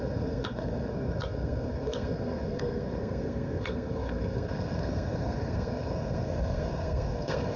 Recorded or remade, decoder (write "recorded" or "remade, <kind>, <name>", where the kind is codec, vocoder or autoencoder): remade, codec, SNAC